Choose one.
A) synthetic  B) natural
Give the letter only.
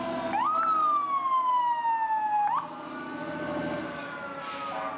B